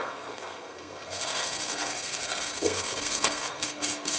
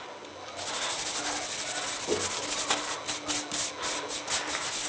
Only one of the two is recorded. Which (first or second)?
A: second